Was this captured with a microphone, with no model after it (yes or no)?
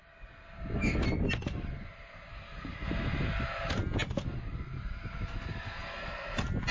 yes